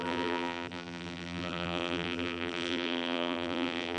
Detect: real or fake fake